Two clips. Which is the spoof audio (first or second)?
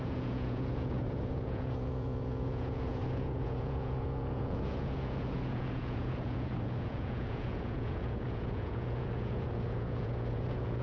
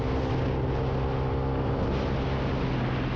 first